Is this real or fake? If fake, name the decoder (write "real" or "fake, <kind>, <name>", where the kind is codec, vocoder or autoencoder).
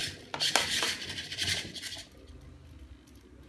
real